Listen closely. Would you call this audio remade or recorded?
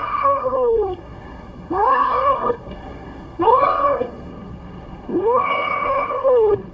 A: remade